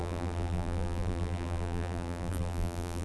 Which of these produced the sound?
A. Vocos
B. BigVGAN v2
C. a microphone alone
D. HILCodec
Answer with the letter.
B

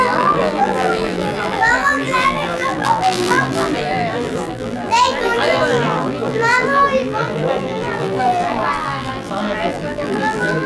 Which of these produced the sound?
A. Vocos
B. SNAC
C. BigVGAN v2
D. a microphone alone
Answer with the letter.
C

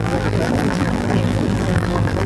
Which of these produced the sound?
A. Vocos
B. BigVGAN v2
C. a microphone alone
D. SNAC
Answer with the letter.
B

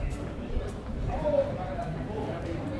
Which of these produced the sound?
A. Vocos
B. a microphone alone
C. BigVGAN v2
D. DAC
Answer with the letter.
C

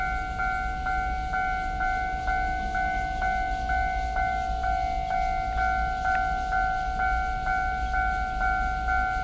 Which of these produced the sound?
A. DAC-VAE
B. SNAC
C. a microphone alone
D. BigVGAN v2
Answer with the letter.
C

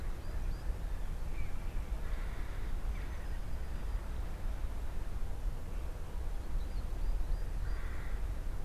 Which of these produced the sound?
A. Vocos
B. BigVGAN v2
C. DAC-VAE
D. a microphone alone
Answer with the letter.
D